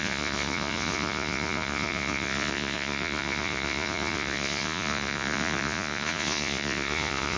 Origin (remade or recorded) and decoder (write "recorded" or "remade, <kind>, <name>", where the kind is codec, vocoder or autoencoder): remade, vocoder, Vocos